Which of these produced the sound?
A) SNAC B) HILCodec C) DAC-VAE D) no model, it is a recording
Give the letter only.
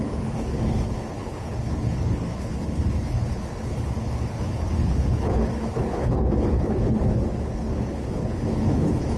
B